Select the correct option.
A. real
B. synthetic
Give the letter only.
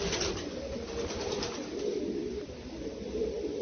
A